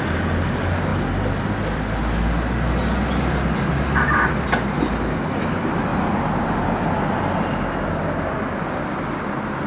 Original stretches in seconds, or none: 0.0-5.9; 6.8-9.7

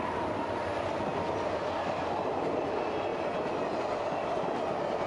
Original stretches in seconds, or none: 0.0-5.1

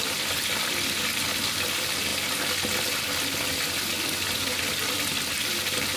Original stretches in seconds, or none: 2.1-4.6

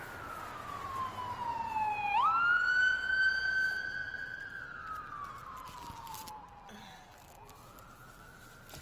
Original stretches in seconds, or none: 0.0-4.0; 4.6-5.4; 8.4-8.8